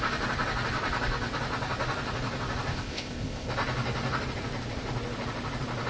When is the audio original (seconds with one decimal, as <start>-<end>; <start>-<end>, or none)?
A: 0.0-2.7; 3.5-5.9